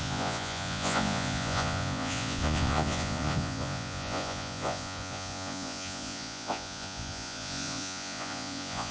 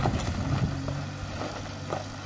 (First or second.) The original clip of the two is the second